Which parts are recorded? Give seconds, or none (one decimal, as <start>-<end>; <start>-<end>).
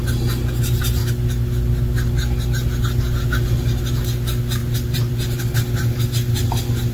0.0-6.9